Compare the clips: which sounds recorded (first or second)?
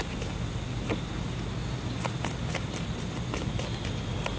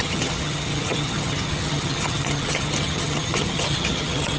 first